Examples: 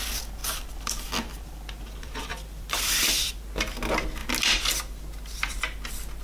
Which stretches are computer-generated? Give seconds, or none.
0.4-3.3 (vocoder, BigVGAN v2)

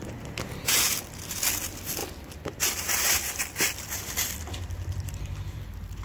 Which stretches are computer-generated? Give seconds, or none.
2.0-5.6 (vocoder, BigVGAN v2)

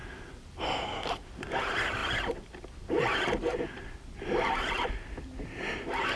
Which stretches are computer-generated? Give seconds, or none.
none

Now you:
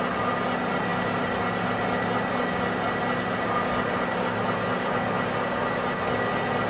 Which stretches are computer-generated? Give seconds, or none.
none